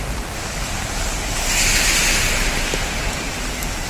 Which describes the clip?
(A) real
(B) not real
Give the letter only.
A